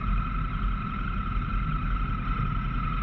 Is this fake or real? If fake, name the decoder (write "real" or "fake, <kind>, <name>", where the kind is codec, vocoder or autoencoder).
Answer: real